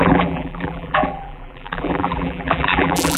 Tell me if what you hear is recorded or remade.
remade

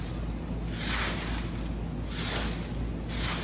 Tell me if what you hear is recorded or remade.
recorded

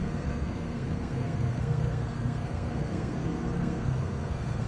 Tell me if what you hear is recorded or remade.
remade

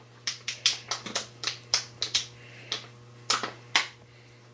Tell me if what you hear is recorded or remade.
recorded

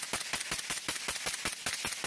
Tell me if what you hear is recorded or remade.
recorded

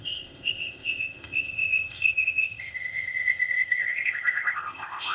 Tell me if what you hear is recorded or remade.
remade